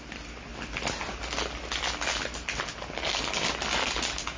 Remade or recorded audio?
recorded